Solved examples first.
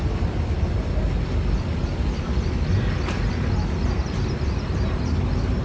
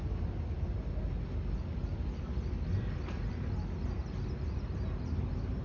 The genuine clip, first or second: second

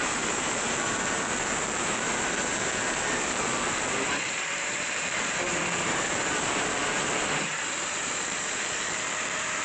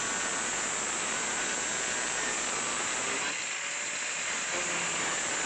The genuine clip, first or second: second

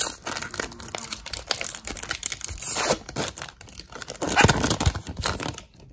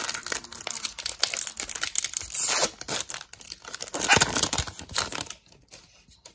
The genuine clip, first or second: second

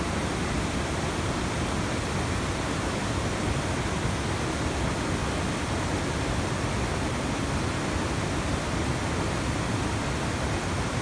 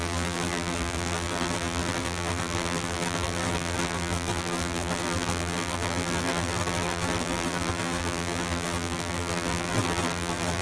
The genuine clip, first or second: first